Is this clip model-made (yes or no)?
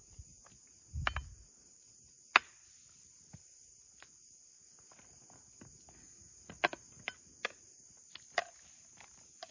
no